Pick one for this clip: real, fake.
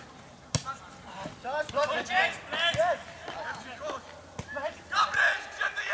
real